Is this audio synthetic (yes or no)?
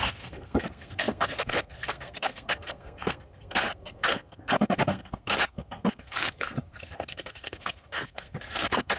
yes